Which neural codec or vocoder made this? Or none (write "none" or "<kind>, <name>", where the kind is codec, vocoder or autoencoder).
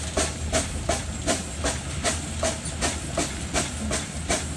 none